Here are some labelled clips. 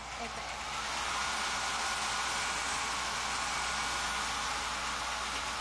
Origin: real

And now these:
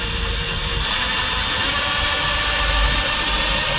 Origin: real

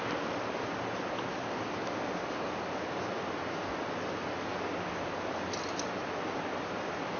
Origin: real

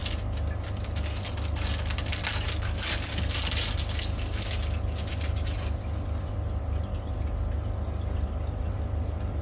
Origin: real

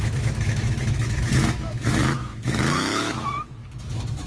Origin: fake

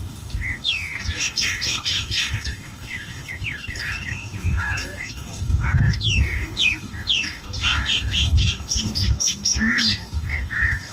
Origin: fake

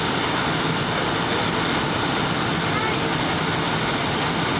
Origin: real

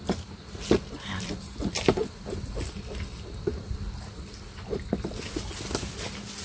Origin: real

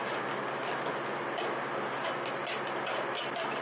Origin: real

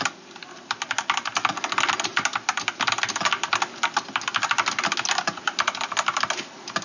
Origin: real